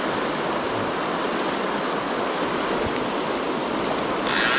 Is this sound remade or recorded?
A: recorded